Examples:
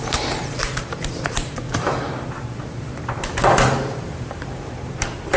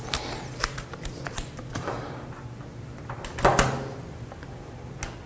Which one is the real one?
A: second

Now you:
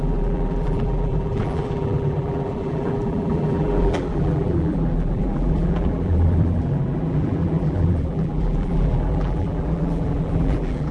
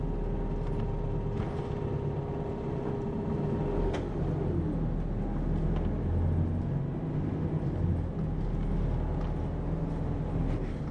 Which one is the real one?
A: second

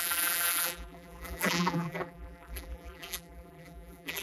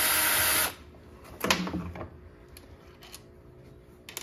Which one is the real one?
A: second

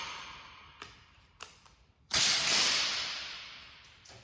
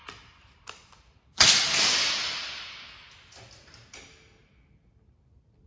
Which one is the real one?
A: second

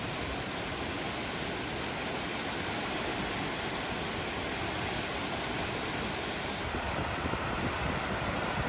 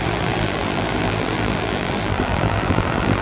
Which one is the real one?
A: first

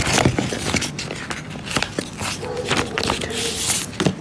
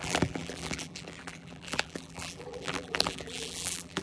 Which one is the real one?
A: first